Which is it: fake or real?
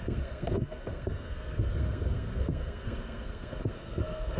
fake